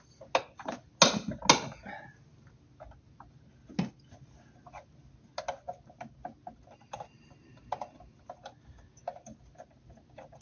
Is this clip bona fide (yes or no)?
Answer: yes